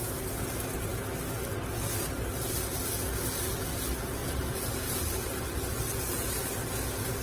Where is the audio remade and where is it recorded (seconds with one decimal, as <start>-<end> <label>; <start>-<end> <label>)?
0.0-4.2 recorded; 4.2-6.6 remade; 6.6-7.2 recorded